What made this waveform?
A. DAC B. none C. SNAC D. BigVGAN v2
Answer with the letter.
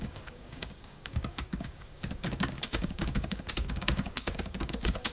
A